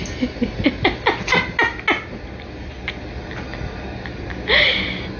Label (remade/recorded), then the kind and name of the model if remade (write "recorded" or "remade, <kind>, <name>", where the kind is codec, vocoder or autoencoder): recorded